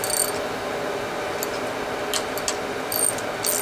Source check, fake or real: real